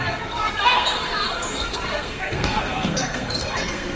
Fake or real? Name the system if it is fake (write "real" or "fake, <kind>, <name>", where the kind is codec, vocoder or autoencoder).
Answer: fake, codec, SNAC